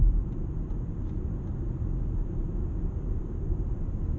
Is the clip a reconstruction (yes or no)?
no